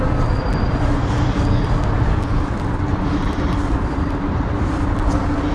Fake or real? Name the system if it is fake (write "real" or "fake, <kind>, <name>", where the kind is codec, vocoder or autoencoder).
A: fake, vocoder, BigVGAN v2